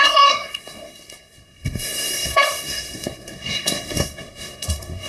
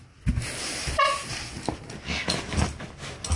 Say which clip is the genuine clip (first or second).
second